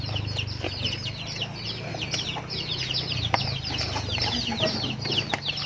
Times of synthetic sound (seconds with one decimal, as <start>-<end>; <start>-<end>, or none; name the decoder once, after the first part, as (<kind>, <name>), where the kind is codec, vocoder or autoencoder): none